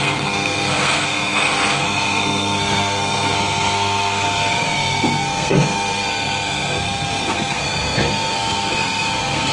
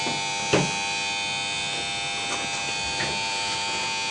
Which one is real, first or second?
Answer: second